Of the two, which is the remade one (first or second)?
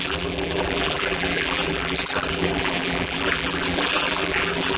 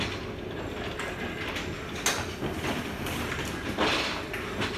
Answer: first